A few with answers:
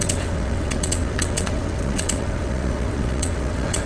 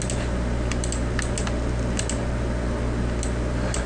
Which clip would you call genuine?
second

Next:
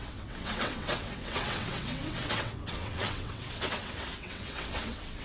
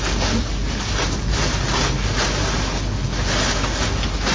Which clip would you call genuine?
second